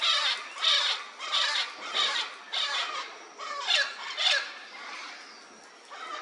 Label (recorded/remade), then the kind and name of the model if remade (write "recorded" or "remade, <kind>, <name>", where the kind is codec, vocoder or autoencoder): recorded